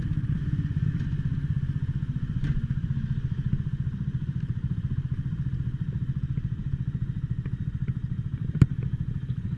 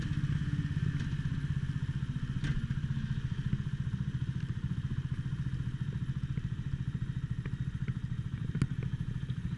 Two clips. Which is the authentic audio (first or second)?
second